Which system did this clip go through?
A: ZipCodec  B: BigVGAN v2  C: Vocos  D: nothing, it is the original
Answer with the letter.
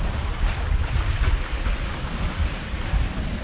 B